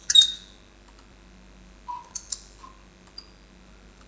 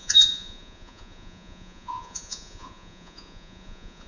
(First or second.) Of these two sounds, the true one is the first